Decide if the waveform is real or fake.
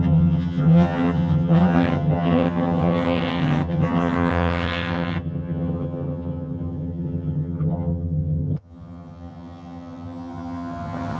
fake